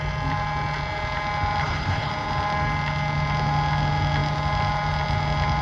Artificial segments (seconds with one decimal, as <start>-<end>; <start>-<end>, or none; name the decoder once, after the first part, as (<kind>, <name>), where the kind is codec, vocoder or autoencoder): 1.6-2.1 (codec, HILCodec)